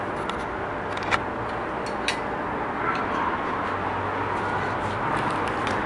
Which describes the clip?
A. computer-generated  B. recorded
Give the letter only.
B